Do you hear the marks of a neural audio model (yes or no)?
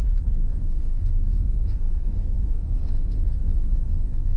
yes